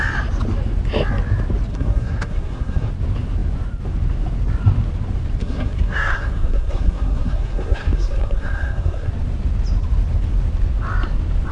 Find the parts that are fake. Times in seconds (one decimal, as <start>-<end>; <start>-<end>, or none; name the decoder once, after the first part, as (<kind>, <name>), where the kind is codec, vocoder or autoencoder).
1.7-2.9 (codec, SNAC); 5.4-9.1